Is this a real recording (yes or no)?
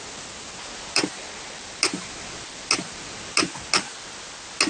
yes